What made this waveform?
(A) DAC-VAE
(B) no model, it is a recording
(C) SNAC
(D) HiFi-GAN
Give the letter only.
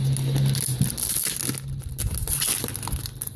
B